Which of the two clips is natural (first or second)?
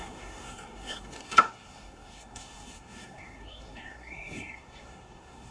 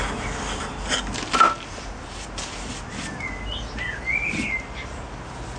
second